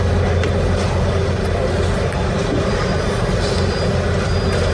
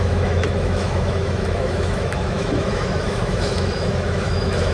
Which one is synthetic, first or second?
second